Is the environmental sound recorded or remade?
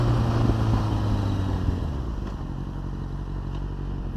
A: recorded